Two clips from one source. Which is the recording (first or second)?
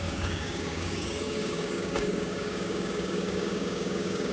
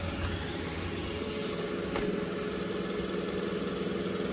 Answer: second